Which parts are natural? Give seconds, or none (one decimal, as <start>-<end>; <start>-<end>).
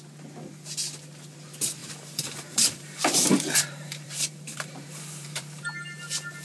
0.0-1.8; 5.6-6.4